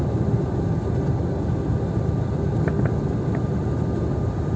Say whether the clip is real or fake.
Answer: real